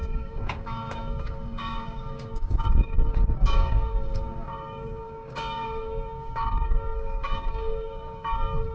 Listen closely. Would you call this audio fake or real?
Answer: fake